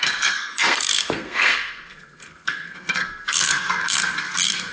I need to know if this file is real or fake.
fake